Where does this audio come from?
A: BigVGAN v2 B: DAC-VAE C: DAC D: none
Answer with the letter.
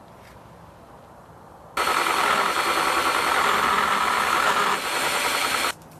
D